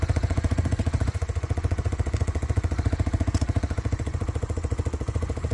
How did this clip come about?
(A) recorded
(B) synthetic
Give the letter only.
B